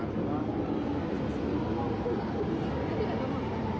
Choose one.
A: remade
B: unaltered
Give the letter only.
B